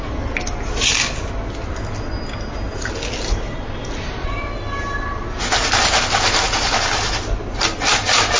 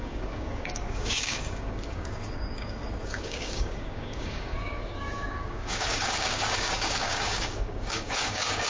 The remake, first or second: second